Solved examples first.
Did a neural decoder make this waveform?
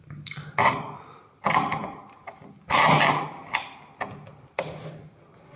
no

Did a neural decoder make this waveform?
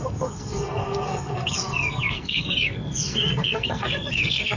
yes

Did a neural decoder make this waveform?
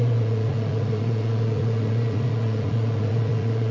yes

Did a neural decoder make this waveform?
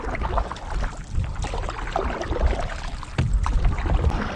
no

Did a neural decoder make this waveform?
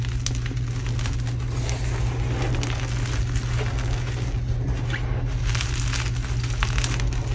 no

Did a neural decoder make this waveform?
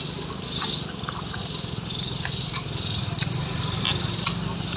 no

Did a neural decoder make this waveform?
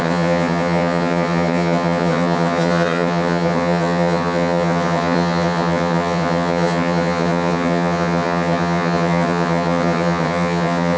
yes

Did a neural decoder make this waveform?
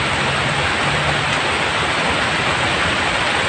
no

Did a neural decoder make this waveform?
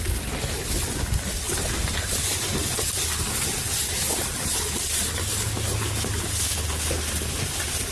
no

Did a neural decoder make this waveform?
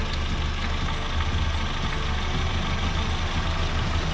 no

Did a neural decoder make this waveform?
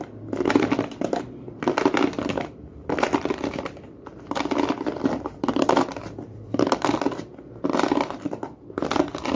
yes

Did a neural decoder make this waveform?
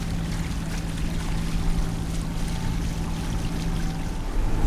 no